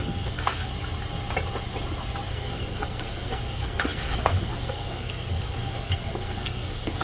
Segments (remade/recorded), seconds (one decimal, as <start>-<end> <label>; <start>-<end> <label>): 0.0-0.7 remade; 0.7-2.3 recorded; 2.3-7.0 remade